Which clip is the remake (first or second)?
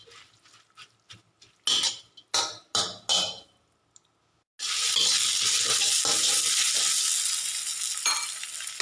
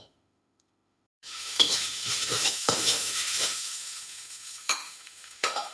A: second